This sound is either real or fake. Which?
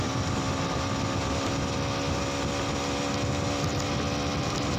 real